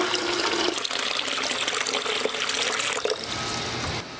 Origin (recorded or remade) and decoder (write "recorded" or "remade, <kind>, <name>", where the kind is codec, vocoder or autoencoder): recorded